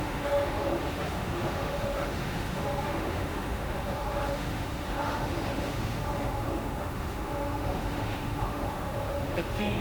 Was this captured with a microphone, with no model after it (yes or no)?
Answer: no